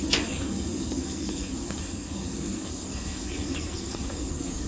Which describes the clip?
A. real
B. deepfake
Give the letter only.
B